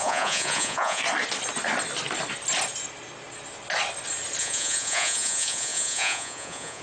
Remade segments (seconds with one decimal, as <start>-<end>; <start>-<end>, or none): 0.0-1.0; 4.4-6.8